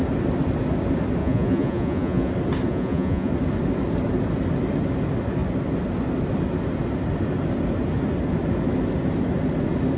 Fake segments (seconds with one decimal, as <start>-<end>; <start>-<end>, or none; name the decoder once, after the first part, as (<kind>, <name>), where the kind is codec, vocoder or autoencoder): 1.2-2.3 (vocoder, Vocos); 2.7-3.3